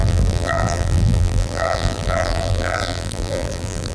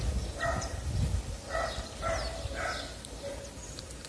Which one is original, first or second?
second